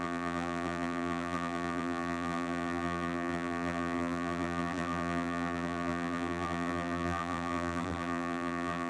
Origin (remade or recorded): remade